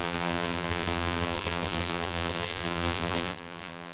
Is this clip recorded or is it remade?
remade